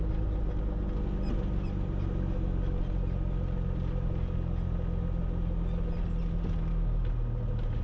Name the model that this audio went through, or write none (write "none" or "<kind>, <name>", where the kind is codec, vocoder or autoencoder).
none